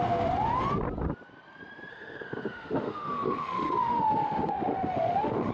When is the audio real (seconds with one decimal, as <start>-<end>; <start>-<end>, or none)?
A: 0.0-1.9